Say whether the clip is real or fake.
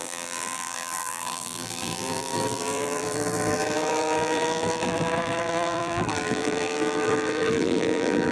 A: fake